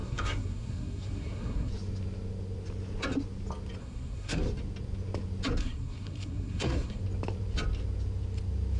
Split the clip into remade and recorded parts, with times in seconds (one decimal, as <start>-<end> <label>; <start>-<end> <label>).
0.0-1.7 remade; 1.7-3.8 recorded; 3.8-4.4 remade; 4.4-5.6 recorded; 5.6-7.0 remade; 7.0-8.8 recorded